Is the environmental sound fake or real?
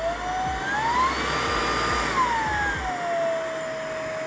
real